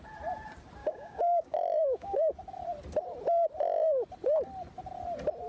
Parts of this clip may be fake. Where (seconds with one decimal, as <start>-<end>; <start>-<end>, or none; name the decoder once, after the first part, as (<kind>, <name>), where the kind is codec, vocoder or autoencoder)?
0.8-2.3 (codec, DAC)

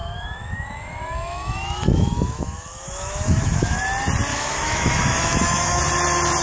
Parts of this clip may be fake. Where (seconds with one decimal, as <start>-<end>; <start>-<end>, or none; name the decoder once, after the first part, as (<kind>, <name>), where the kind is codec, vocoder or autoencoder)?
0.0-3.8 (autoencoder, DAC-VAE); 4.3-5.8

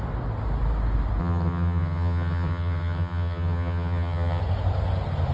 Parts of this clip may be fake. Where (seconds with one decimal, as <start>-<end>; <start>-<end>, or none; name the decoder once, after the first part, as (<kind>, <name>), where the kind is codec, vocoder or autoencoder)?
1.2-4.4 (vocoder, HiFi-GAN)

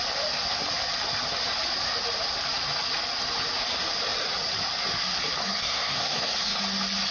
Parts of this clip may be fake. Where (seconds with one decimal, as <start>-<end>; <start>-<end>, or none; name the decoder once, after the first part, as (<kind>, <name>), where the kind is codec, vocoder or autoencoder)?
5.4-6.6 (codec, SNAC)

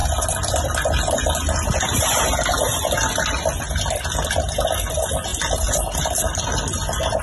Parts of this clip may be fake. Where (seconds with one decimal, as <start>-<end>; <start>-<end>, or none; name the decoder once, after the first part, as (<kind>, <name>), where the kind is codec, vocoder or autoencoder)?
none

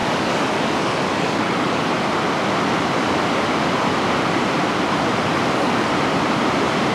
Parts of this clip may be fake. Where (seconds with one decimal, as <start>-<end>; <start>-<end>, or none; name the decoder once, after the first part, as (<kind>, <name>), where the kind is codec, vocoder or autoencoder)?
0.0-1.9 (codec, DAC); 5.3-5.9

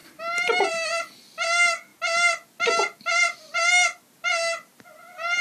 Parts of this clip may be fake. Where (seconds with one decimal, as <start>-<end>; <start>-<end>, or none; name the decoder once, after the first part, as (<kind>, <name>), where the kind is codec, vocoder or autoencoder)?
none

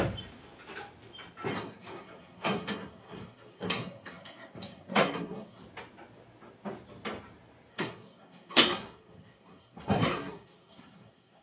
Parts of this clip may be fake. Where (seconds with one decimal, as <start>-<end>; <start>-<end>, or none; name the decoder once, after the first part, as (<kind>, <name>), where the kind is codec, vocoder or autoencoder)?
1.5-5.6 (codec, SNAC); 7.7-11.4